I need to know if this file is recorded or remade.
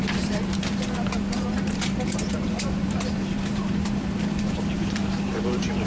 remade